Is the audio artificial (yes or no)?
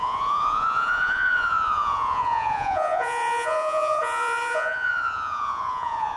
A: yes